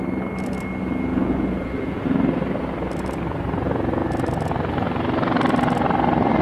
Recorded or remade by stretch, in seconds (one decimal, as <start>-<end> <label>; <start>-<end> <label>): 0.0-1.1 recorded; 1.1-2.0 remade; 2.0-6.4 recorded